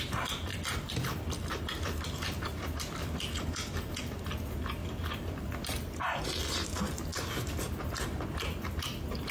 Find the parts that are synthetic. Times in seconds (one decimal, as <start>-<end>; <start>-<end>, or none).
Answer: 0.5-4.0; 4.8-6.4